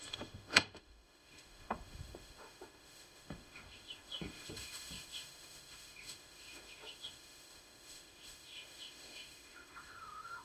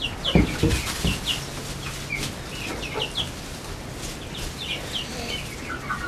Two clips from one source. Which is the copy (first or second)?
first